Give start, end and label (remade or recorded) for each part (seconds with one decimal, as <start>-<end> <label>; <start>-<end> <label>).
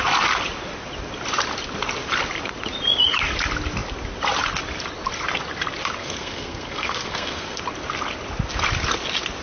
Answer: 0.0-6.0 recorded; 6.0-7.6 remade; 7.6-9.4 recorded